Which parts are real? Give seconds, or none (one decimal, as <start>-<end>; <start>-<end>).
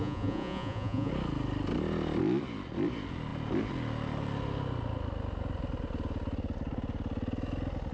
1.1-7.9